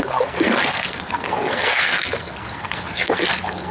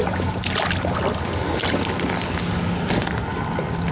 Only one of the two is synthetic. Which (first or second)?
first